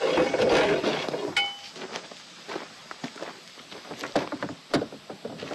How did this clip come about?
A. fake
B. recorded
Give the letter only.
B